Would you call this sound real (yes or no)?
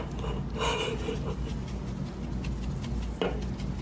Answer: yes